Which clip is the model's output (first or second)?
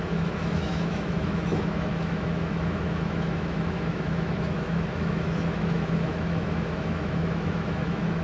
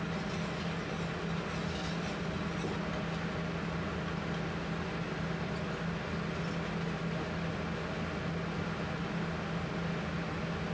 first